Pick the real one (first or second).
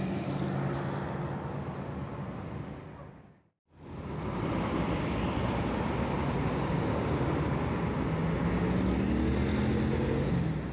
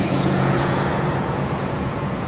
first